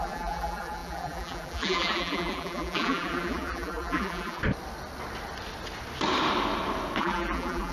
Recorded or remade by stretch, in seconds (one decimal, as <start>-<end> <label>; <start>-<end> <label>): 0.0-4.4 remade; 4.4-7.0 recorded; 7.0-7.7 remade